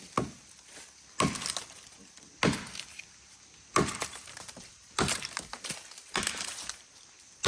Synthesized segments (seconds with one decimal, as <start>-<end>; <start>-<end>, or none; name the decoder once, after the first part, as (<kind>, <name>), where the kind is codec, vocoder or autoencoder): 4.0-7.0 (vocoder, BigVGAN v2)